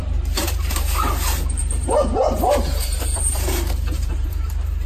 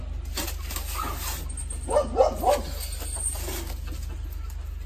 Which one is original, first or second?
second